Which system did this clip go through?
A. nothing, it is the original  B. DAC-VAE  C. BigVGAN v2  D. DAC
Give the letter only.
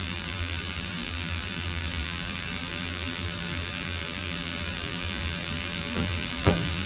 C